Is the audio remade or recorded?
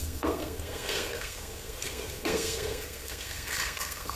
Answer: remade